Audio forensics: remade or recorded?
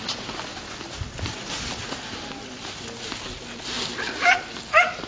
recorded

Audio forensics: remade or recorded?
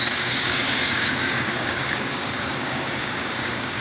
remade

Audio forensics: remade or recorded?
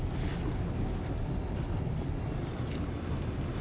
recorded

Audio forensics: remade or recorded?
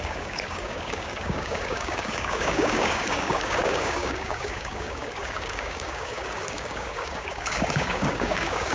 remade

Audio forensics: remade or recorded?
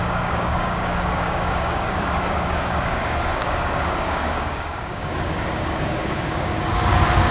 remade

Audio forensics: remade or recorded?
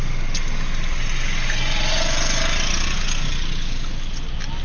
recorded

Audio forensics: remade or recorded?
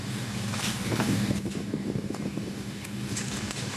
remade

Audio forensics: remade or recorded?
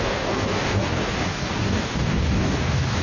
remade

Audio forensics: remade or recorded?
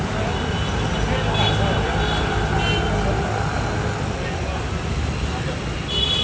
recorded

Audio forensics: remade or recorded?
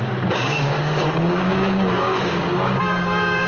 remade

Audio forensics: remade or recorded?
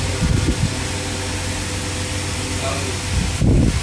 recorded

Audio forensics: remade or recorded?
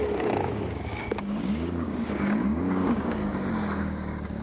remade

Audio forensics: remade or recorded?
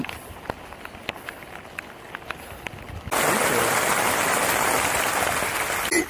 recorded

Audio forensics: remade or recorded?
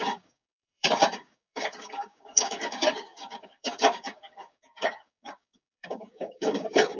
remade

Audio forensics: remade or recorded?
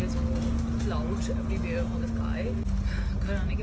recorded